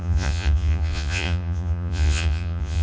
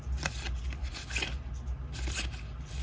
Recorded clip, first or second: second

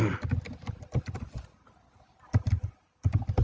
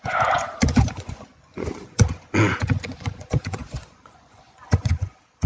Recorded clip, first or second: first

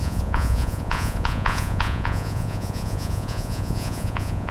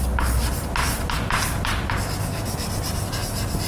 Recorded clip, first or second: second